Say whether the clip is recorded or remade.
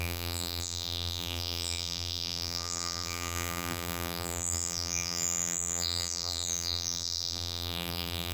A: remade